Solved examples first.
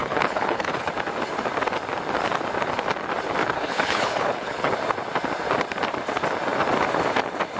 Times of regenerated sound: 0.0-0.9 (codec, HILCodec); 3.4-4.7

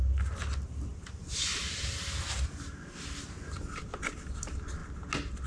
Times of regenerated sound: none

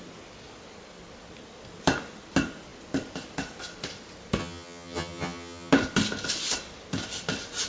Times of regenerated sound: 4.4-5.7 (vocoder, HiFi-GAN)

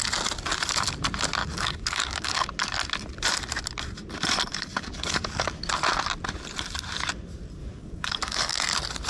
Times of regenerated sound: 1.4-2.5 (codec, DAC); 4.5-5.5; 7.6-8.6

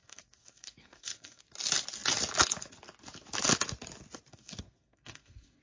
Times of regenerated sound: 0.0-1.4 (codec, SNAC); 4.3-5.6

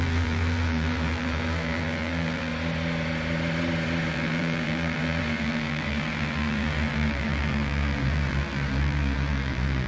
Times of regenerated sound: 0.0-2.5 (vocoder, BigVGAN v2); 4.1-9.9